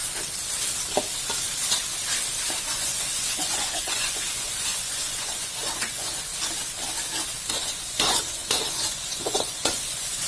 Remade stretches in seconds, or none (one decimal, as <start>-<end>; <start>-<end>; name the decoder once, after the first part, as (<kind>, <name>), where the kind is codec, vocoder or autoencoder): 2.6-6.3 (vocoder, Vocos); 7.5-10.3